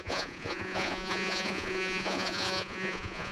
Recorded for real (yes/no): no